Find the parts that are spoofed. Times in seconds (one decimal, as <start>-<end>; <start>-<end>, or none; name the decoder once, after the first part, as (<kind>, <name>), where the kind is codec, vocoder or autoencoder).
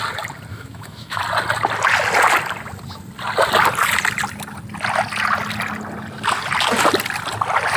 0.5-1.2 (autoencoder, DAC-VAE)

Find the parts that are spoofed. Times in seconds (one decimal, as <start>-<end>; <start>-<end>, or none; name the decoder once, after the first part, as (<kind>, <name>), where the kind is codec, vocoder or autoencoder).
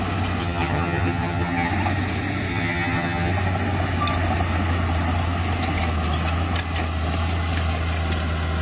0.4-1.7 (vocoder, HiFi-GAN); 2.5-3.3